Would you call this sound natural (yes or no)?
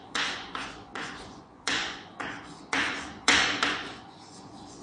no